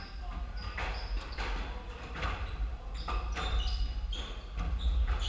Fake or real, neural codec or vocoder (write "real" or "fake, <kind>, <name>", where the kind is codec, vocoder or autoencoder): real